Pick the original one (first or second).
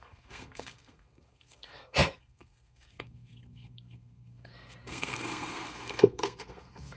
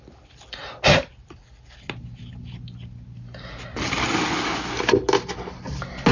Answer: second